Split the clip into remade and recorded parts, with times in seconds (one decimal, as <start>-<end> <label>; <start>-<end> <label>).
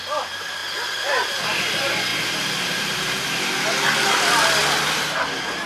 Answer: 0.0-5.7 recorded